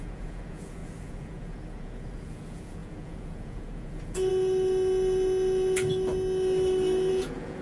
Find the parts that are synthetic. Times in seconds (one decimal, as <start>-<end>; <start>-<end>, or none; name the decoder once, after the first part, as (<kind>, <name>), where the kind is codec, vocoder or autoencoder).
0.0-6.1 (vocoder, Vocos); 7.1-7.6